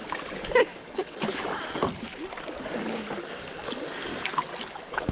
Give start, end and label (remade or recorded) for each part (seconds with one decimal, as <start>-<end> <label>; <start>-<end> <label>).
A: 0.0-1.2 remade; 1.2-2.6 recorded; 2.6-4.1 remade; 4.1-4.6 recorded; 4.6-5.1 remade